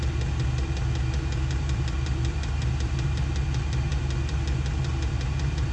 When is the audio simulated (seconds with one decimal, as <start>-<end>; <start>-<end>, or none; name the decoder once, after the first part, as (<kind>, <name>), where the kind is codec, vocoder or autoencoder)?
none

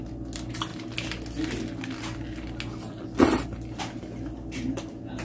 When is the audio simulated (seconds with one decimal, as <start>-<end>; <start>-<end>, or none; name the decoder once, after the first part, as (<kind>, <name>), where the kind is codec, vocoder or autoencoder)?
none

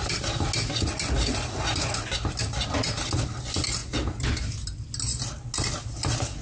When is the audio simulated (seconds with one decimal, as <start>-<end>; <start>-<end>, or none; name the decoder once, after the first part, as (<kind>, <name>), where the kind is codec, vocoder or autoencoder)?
none

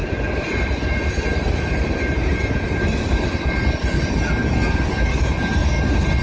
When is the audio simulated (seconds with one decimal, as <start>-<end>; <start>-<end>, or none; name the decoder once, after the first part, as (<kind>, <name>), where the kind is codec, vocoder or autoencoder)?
0.0-3.4 (vocoder, BigVGAN v2); 5.1-5.7

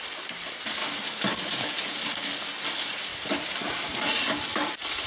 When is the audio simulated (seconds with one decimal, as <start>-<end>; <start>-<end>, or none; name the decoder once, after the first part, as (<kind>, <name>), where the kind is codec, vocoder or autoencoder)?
0.8-1.5 (vocoder, BigVGAN v2); 3.1-5.1

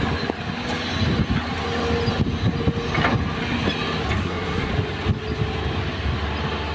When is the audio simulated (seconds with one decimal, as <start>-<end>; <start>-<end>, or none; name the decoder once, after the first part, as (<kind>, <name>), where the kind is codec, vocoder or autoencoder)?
4.2-4.7 (codec, SNAC)